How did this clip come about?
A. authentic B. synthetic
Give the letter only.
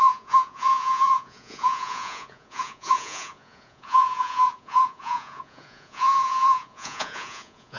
B